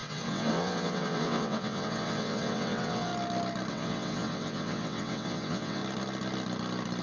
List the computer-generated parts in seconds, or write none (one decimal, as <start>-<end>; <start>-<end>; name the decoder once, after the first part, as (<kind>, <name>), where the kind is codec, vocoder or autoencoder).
0.0-3.1 (vocoder, WaveNeXt); 3.7-5.8